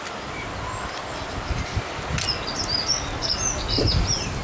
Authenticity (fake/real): real